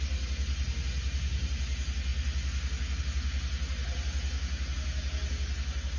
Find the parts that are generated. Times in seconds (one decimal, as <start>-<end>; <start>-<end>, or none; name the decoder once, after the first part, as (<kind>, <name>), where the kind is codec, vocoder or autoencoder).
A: none